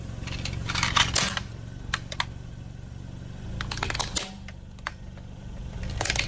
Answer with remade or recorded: recorded